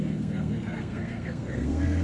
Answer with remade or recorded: remade